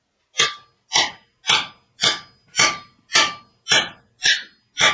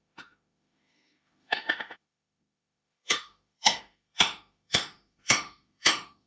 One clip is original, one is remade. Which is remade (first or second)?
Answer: second